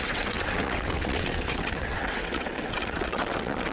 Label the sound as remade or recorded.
remade